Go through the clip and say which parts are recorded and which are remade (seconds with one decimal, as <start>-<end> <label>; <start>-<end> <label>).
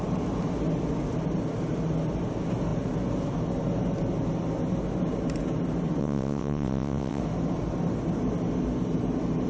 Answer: 0.0-6.0 recorded; 6.0-7.2 remade; 7.2-9.5 recorded